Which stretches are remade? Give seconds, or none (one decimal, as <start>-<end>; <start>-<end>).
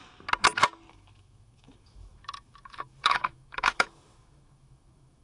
0.9-5.2